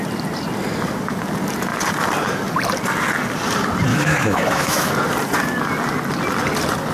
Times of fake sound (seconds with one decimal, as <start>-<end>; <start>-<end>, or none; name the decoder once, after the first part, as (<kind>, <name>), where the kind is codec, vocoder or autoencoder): 3.9-4.9 (autoencoder, DAC-VAE)